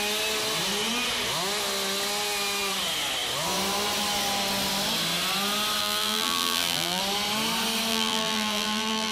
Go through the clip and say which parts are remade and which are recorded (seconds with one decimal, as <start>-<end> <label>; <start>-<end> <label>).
0.0-5.8 recorded; 5.8-7.0 remade; 7.0-7.9 recorded; 7.9-9.1 remade